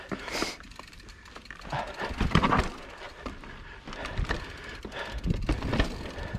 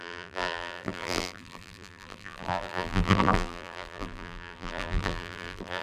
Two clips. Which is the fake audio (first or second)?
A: second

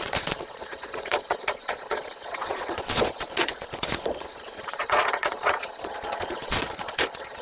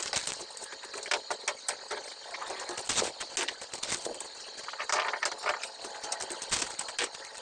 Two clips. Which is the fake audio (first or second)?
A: first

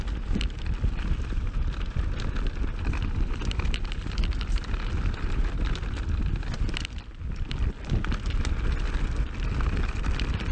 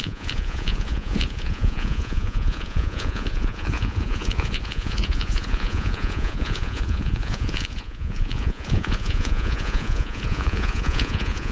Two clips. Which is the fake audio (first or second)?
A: second